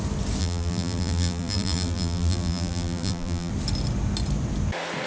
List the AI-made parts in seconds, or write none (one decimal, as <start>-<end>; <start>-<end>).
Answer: 0.4-3.5